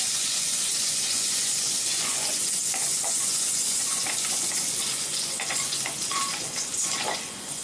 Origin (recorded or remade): remade